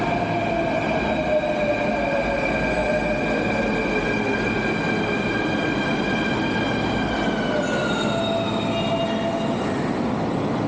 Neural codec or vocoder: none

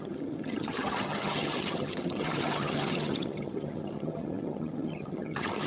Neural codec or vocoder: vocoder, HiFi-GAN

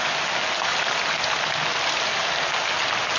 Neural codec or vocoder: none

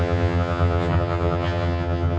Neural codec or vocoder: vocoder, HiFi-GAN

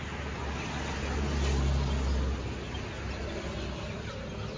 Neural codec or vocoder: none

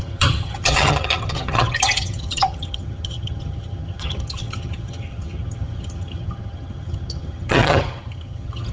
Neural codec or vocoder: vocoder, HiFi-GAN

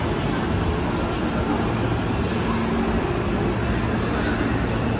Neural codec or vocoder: none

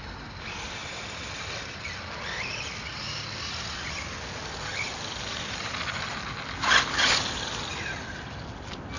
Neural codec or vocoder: none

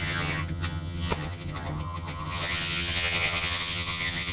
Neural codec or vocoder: vocoder, HiFi-GAN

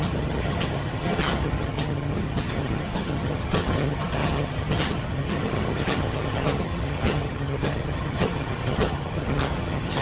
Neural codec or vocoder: vocoder, HiFi-GAN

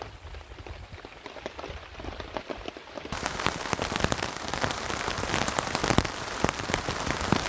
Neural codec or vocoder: none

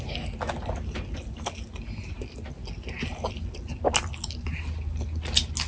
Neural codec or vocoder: none